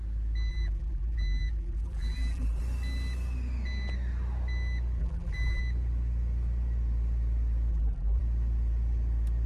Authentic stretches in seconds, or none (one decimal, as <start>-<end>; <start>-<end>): 0.0-0.5; 2.6-5.0; 5.6-7.7; 8.2-9.5